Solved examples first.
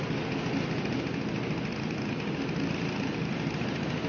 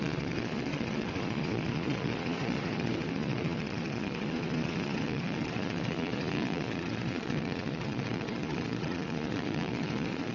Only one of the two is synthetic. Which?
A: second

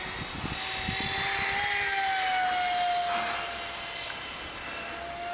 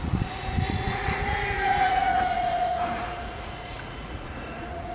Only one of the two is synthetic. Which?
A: second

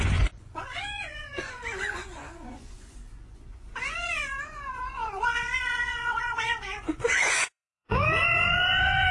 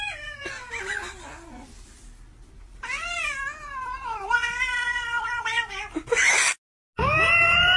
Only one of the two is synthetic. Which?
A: first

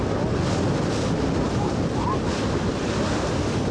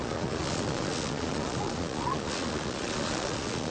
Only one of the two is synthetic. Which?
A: second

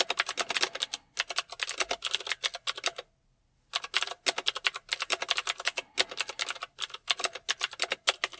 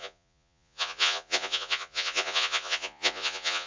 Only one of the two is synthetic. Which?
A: second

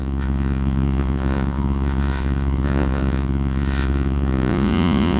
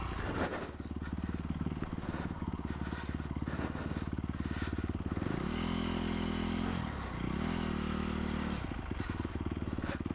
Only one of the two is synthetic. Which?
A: first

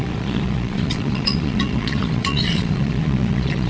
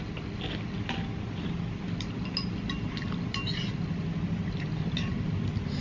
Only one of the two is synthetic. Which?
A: first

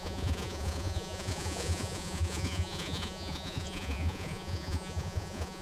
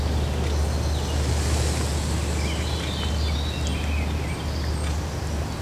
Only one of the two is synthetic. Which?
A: first